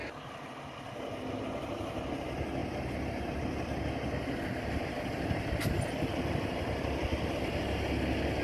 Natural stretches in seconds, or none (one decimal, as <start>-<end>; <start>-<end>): 0.0-2.6; 7.6-8.4